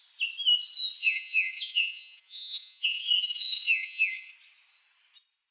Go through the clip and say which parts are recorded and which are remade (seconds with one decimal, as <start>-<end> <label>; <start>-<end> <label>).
0.0-1.0 recorded; 1.0-4.3 remade; 4.3-5.5 recorded